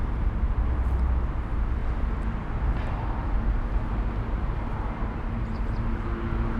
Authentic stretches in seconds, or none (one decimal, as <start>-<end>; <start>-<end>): 0.0-6.6